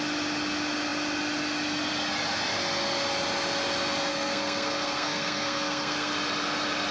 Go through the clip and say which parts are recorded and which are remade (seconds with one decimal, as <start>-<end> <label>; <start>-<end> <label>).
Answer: 0.0-4.1 recorded; 4.1-6.1 remade; 6.1-6.9 recorded